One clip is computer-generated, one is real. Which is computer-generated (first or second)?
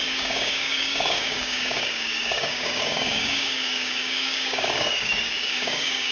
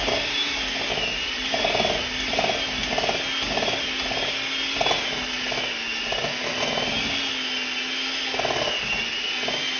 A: first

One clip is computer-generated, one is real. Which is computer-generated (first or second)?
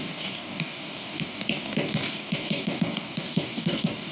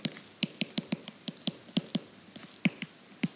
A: first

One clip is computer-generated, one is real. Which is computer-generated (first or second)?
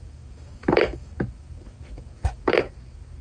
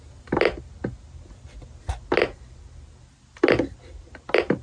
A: first